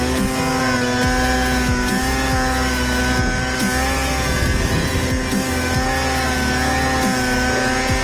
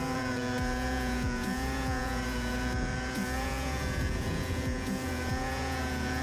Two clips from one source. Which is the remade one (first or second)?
second